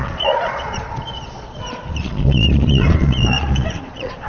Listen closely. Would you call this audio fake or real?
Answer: fake